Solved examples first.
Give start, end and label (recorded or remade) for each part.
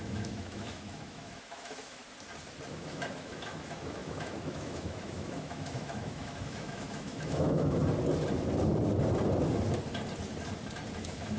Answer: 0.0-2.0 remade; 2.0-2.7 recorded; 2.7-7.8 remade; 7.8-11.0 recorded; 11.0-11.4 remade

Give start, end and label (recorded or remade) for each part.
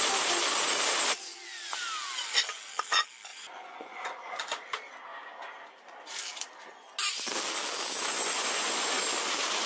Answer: 0.0-3.3 recorded; 3.3-4.4 remade; 4.4-8.0 recorded; 8.0-9.0 remade; 9.0-9.7 recorded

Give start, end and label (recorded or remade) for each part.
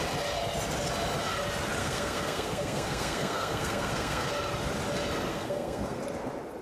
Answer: 0.0-1.8 recorded; 1.8-4.3 remade; 4.3-5.3 recorded; 5.3-6.0 remade; 6.0-6.6 recorded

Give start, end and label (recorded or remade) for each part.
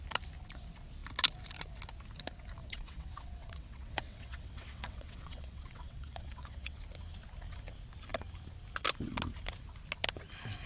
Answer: 0.0-2.6 recorded; 2.6-6.8 remade; 6.8-10.7 recorded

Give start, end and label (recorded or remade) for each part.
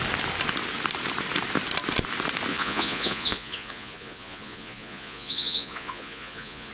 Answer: 0.0-2.5 recorded; 2.5-6.7 remade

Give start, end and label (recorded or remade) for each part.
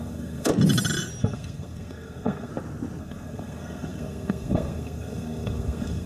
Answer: 0.0-0.5 remade; 0.5-1.2 recorded; 1.2-2.5 remade; 2.5-3.0 recorded; 3.0-6.1 remade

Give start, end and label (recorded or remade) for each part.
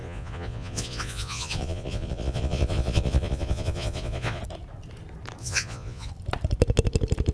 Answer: 0.0-4.4 remade; 4.4-5.4 recorded; 5.4-6.1 remade; 6.1-7.3 recorded